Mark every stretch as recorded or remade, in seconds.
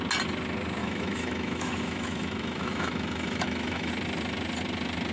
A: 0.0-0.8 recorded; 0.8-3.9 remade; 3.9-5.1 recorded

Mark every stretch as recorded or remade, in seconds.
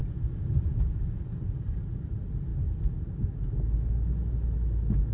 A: 0.0-5.1 recorded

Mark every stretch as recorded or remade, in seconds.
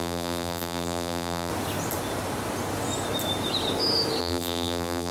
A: 0.0-1.5 remade; 1.5-4.2 recorded; 4.2-5.1 remade